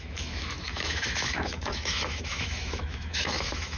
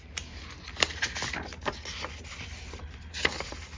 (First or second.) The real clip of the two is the second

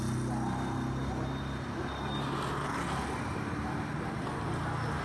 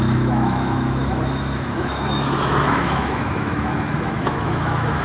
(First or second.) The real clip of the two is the first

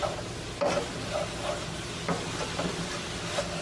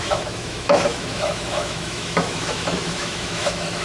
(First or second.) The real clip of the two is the first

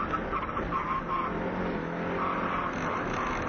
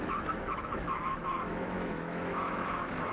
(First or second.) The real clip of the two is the first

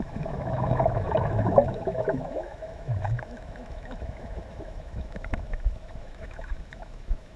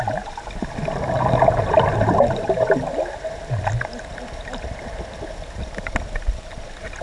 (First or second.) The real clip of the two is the second